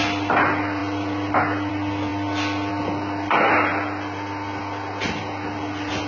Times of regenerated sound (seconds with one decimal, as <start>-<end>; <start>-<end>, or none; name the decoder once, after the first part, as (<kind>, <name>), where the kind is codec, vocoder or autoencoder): none